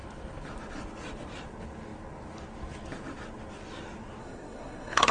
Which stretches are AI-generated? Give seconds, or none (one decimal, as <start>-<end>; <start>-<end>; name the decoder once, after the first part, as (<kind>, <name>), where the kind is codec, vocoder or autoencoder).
4.2-5.1 (codec, SNAC)